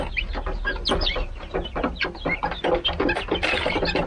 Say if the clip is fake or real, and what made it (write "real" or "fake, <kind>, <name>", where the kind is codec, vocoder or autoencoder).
real